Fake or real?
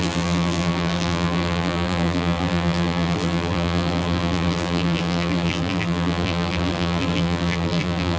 fake